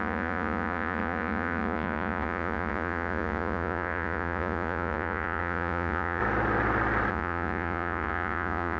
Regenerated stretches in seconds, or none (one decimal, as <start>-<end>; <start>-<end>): 0.0-6.2; 7.1-8.8